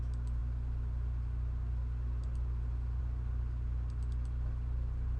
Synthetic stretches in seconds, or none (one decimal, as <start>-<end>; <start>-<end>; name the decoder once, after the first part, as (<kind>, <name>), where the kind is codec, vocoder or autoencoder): none